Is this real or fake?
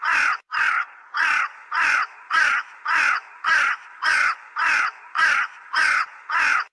fake